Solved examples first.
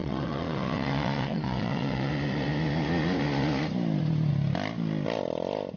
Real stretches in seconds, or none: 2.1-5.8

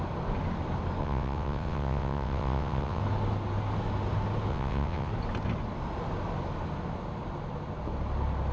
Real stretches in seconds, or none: 0.0-1.0; 3.0-4.5; 5.1-8.5

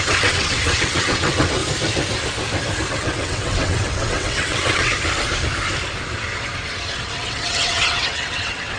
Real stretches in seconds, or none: 1.6-2.9; 4.9-7.0

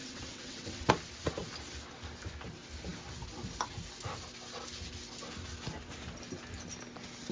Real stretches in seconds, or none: 0.9-7.3

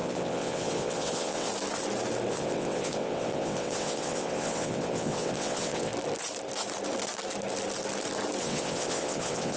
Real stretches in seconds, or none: 1.5-2.3; 5.9-8.4

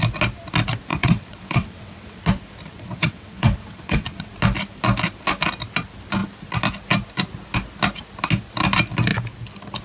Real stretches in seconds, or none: 0.0-0.9; 2.2-2.7; 4.3-9.8

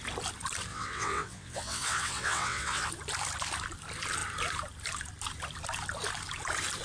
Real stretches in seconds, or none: 0.0-0.7; 2.9-6.8

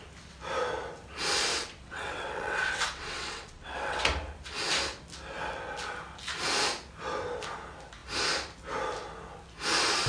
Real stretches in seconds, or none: 0.0-1.5; 4.0-10.1